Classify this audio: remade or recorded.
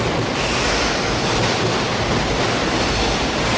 remade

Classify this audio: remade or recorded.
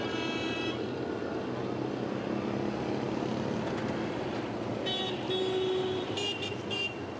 recorded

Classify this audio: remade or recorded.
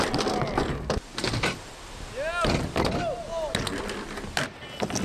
recorded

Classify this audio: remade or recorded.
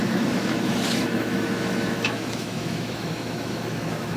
remade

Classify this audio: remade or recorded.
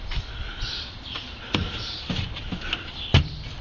recorded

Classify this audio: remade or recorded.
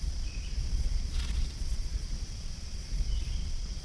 remade